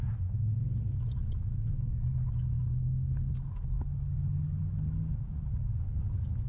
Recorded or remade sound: recorded